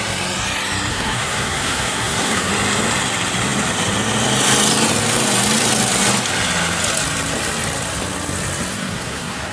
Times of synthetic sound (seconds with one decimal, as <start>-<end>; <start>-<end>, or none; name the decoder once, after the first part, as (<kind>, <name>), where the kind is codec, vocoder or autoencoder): 0.9-2.5 (codec, SNAC); 8.7-9.5